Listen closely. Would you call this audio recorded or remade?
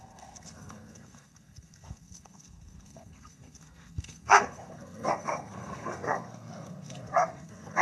remade